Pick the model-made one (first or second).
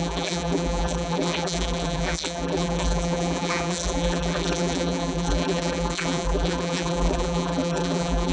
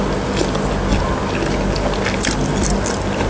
first